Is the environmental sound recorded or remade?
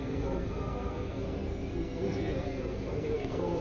remade